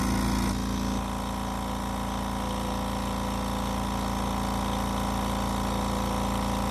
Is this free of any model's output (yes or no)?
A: yes